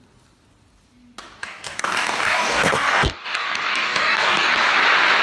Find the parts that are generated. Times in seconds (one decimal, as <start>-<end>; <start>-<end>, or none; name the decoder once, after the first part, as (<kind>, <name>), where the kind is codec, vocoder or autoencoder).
1.4-4.5 (codec, DAC)